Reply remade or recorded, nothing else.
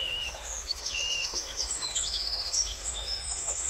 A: remade